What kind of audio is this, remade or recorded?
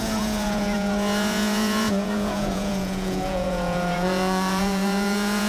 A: remade